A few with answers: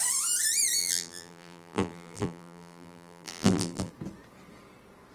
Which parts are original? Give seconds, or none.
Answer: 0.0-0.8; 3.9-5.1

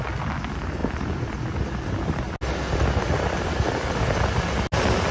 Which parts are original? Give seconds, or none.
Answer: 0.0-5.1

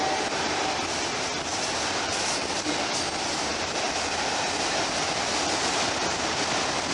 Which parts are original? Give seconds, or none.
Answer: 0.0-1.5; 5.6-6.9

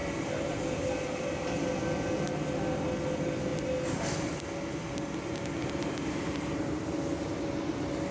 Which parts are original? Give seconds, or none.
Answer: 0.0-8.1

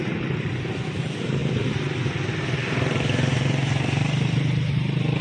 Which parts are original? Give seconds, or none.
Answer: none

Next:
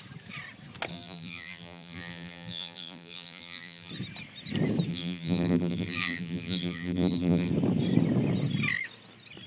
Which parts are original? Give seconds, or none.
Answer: 0.0-0.9; 3.9-4.9; 7.5-9.5

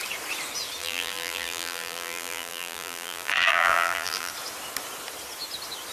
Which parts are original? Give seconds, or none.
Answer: 0.0-0.8; 4.3-5.9

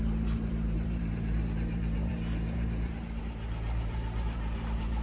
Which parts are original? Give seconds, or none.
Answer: none